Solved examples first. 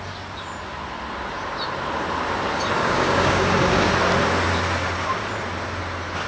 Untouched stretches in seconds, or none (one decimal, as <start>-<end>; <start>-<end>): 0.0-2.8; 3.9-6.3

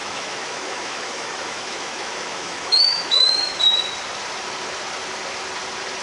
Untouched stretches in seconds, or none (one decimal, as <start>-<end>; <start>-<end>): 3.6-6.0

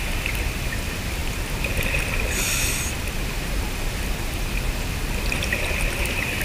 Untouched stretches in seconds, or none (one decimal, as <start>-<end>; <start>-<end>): 0.0-6.4

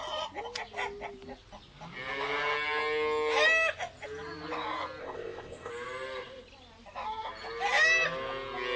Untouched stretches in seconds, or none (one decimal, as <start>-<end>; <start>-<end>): 0.0-5.0; 5.7-8.8